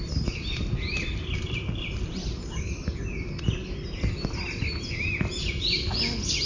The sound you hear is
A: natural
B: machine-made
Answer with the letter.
A